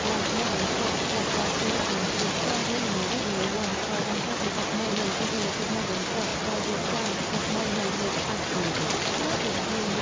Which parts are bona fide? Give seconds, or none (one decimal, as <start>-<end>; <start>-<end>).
0.0-2.6; 3.2-10.0